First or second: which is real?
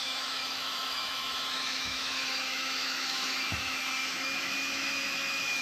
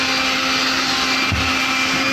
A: second